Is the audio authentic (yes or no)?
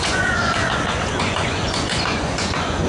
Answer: no